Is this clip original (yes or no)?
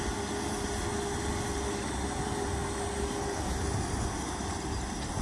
yes